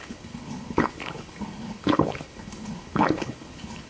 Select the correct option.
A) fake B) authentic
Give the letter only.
A